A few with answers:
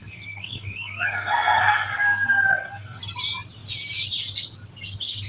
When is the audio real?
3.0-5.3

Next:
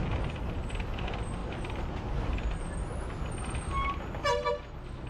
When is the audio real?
0.0-5.1

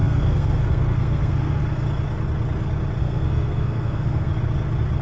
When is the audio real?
1.6-3.0; 4.3-5.0

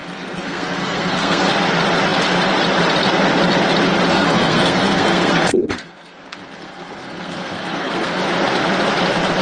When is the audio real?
1.5-4.1; 8.2-9.4

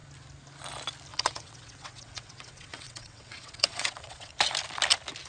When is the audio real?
0.0-1.1; 4.3-5.3

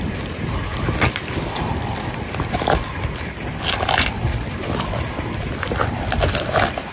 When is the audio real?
0.0-6.9

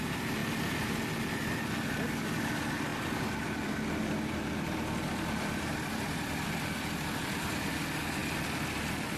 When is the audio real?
0.0-9.2

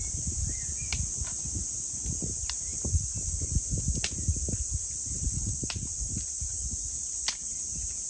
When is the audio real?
0.0-8.1